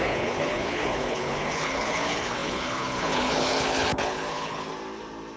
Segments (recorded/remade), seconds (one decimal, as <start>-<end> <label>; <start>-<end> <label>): 0.0-4.7 remade; 4.7-5.4 recorded